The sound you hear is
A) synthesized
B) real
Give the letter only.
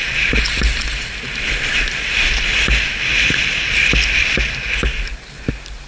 B